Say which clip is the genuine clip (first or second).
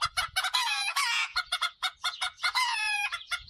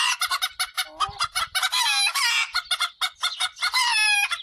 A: second